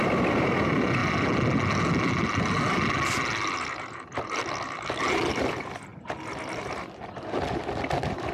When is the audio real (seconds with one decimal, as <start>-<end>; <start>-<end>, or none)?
0.0-8.3